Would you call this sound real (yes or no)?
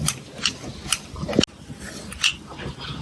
yes